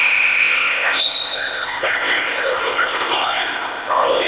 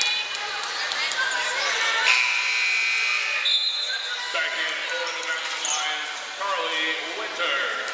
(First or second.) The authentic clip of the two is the second